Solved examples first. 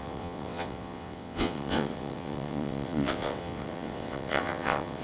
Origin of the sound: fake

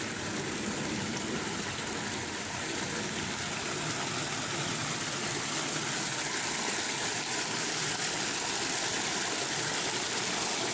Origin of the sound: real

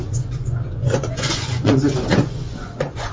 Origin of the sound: fake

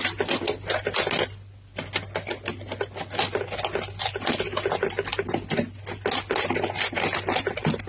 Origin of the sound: real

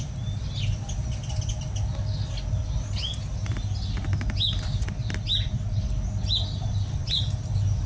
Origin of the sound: real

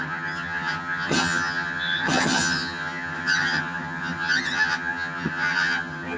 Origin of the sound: fake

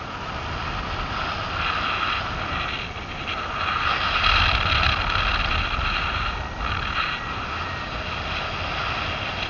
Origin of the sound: real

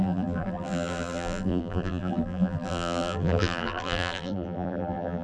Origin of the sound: fake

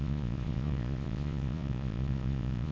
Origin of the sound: fake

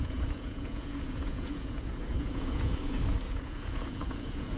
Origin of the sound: fake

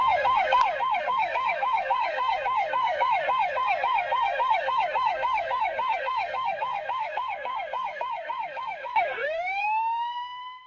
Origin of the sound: fake